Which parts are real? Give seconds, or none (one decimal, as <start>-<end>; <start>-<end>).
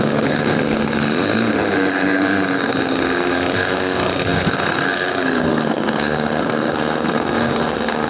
none